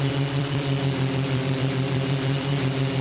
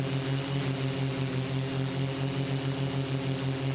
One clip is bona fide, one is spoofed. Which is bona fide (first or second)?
second